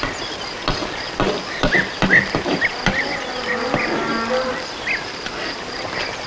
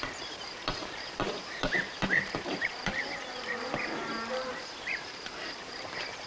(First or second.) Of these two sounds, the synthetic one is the second